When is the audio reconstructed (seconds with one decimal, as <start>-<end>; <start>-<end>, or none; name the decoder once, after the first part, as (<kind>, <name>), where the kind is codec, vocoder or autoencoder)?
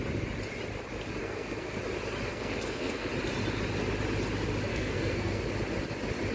1.2-1.8 (codec, SNAC); 2.3-3.1; 4.7-5.4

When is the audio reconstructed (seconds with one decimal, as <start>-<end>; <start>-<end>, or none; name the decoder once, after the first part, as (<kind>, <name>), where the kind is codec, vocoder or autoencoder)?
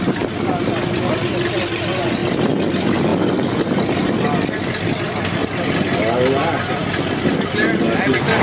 none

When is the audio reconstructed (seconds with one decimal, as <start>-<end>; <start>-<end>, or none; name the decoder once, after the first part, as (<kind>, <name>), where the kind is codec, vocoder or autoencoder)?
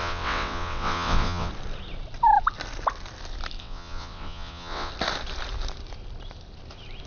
0.0-1.5 (vocoder, WaveNeXt); 3.6-4.9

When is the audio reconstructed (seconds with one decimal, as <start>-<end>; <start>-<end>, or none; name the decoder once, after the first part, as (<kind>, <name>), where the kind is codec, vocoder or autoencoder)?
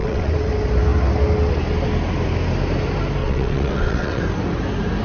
0.0-0.5 (vocoder, WaveNeXt); 3.2-4.2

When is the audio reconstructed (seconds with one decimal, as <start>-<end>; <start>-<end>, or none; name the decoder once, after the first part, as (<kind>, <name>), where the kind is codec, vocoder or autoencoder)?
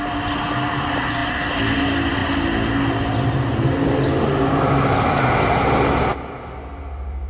none